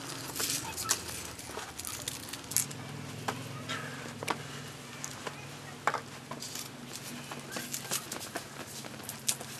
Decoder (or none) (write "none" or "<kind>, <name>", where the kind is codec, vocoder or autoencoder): none